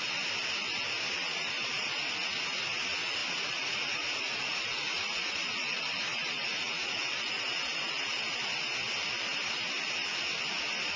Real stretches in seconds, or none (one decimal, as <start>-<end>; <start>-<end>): 0.0-3.2; 7.4-11.0